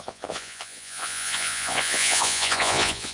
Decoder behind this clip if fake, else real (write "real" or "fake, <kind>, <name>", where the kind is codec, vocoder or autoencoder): fake, vocoder, Vocos